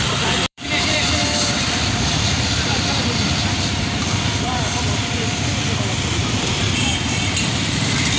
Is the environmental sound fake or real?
fake